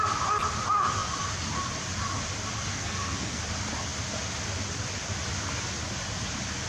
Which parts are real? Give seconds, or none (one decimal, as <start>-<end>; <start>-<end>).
0.0-2.7; 3.4-6.7